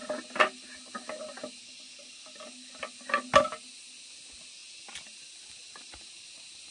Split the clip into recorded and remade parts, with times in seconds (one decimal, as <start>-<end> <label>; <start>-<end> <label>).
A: 0.0-6.7 recorded